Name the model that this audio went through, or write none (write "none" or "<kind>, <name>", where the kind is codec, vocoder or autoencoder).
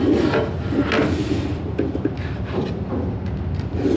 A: none